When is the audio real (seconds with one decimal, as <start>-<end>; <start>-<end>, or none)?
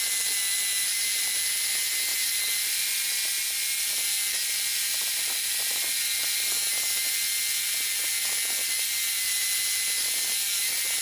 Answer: 0.0-11.0